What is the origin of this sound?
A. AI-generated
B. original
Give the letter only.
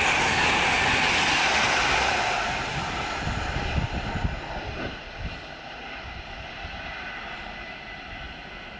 B